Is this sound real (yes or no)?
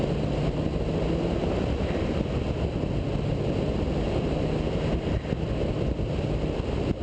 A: yes